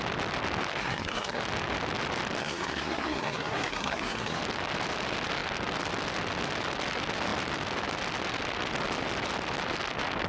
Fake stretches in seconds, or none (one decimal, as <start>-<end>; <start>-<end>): 0.8-1.4; 2.4-4.4